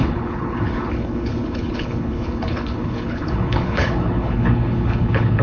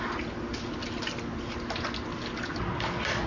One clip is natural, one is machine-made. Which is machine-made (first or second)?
first